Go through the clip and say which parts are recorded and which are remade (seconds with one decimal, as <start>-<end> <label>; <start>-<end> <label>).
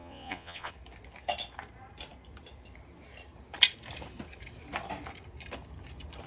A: 0.0-0.7 remade; 0.7-6.3 recorded